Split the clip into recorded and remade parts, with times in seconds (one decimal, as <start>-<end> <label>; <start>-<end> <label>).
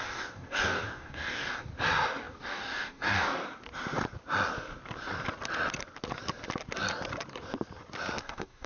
0.0-1.7 remade; 1.7-2.2 recorded; 2.2-3.4 remade; 3.4-8.2 recorded; 8.2-8.7 remade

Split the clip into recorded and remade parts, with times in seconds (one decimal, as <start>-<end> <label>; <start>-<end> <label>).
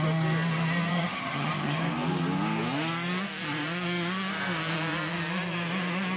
0.0-0.9 recorded; 0.9-1.8 remade; 1.8-6.2 recorded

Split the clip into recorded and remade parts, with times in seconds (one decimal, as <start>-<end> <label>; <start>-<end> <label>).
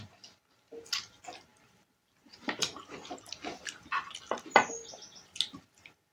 0.0-1.5 recorded; 1.5-2.9 remade; 2.9-6.1 recorded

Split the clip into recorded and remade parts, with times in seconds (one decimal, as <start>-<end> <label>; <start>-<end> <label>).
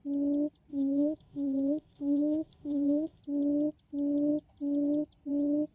0.0-0.7 recorded; 0.7-3.2 remade; 3.2-5.7 recorded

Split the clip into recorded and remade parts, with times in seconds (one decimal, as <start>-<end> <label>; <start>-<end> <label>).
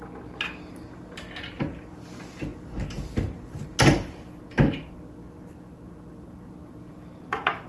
0.0-7.7 recorded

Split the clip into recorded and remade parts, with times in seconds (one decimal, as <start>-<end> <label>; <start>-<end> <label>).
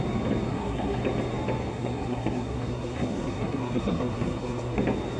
0.0-0.5 recorded; 0.5-1.0 remade; 1.0-1.7 recorded; 1.7-4.8 remade; 4.8-5.2 recorded